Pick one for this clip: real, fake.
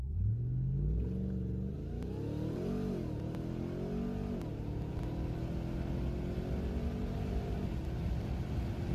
real